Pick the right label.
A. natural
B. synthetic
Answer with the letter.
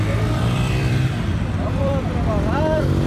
B